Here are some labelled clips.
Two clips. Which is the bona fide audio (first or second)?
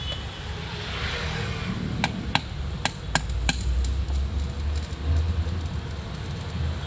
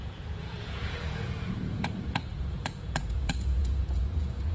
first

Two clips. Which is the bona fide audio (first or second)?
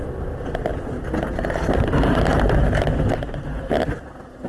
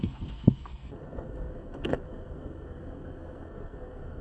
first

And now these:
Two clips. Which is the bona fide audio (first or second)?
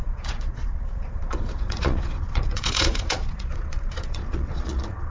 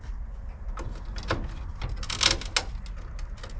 second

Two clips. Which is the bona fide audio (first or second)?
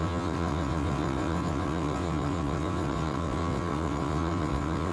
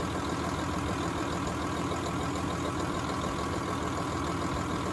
second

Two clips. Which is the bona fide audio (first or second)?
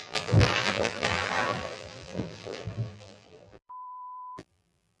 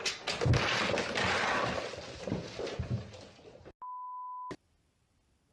second